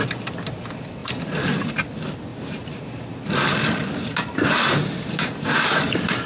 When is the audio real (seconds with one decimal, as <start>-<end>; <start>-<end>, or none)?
0.0-1.0; 1.7-2.3